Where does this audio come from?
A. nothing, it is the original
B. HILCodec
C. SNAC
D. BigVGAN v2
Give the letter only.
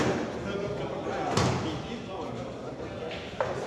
A